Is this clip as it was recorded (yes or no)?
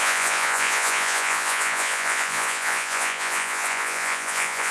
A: no